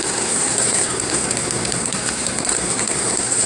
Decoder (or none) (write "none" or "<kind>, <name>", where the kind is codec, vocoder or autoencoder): codec, SNAC